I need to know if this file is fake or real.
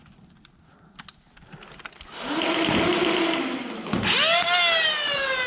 real